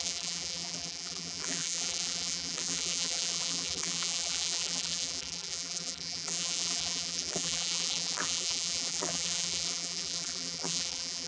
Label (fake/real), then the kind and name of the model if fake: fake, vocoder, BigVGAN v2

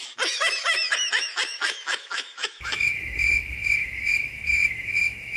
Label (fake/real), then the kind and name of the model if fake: fake, autoencoder, DAC-VAE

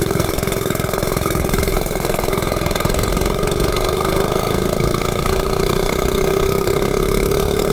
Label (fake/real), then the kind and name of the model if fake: fake, codec, SNAC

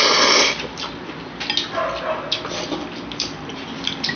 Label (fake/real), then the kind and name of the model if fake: real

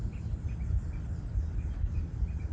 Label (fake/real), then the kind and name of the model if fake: real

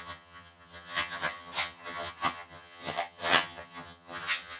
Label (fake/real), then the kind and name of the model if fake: fake, vocoder, HiFi-GAN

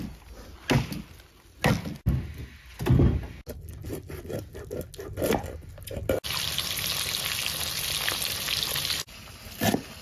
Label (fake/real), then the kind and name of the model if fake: real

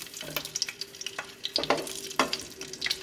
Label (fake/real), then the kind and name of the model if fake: real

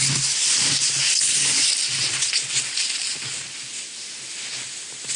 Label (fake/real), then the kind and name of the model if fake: real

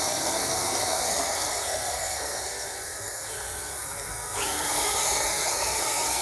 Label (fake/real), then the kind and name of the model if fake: fake, codec, SNAC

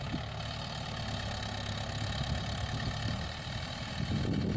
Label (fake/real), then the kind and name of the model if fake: real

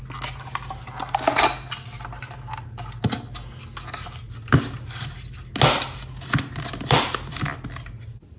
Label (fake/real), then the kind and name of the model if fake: real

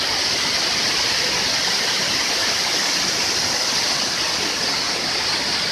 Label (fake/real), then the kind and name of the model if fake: real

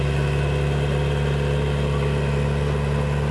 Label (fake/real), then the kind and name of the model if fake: real